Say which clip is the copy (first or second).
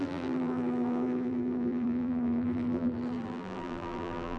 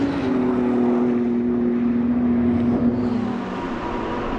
first